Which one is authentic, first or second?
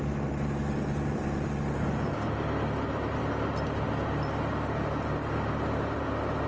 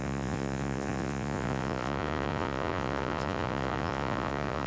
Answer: first